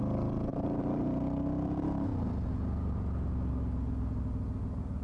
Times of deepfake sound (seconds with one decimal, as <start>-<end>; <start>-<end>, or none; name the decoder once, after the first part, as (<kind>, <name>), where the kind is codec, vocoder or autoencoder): 0.5-3.5 (vocoder, BigVGAN v2)